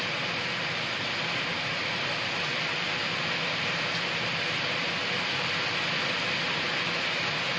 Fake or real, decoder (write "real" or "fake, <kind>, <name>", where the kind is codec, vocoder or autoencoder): real